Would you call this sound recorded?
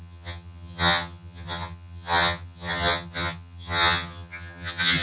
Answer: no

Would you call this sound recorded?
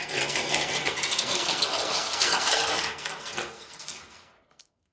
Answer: no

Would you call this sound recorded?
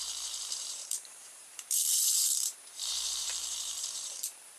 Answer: no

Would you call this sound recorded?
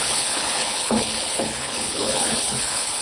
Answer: no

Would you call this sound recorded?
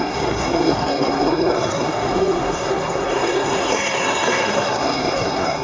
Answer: no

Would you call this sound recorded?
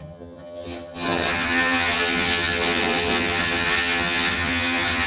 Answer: no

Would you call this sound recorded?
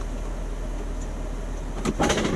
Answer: yes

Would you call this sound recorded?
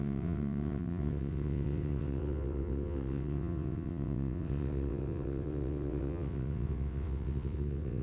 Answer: no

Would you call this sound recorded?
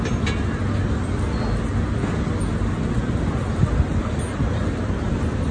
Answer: yes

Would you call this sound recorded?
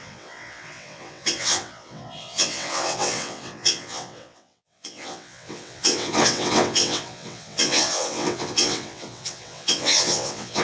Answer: no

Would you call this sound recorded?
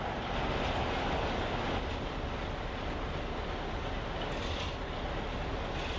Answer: yes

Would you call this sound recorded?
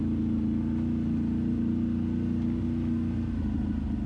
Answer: yes